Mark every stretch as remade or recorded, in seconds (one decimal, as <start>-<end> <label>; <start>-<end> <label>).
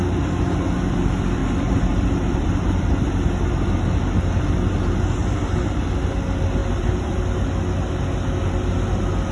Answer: 0.0-1.4 recorded; 1.4-2.8 remade; 2.8-5.2 recorded; 5.2-5.9 remade; 5.9-6.6 recorded; 6.6-7.2 remade; 7.2-9.3 recorded